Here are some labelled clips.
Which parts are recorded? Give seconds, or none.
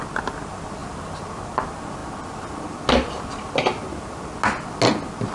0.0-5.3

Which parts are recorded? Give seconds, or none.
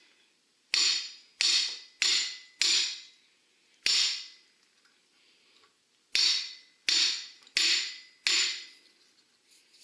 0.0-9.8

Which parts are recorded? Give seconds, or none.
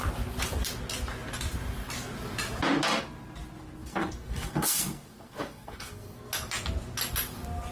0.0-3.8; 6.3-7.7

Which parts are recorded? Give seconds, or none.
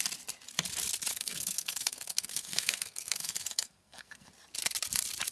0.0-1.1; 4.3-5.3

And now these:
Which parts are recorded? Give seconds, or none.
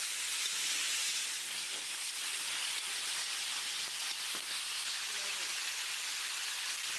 0.0-1.4; 2.1-4.3; 5.0-7.0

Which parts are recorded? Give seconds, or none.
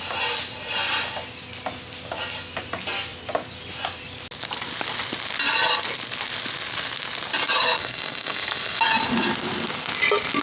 0.0-7.8; 8.8-10.4